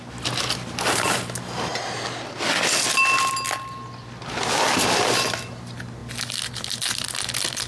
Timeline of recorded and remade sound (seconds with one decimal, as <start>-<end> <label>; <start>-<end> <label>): 0.0-7.7 recorded

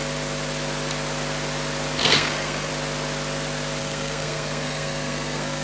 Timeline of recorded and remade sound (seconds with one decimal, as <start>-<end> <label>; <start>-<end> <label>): 0.0-2.0 recorded; 2.0-2.7 remade; 2.7-3.8 recorded; 3.8-5.6 remade

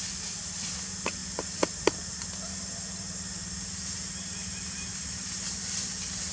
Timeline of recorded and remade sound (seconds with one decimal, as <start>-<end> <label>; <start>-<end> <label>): 0.0-6.3 recorded